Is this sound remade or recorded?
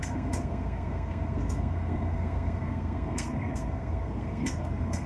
remade